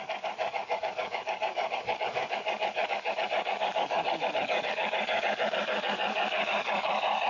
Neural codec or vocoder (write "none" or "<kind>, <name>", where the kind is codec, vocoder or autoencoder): codec, DAC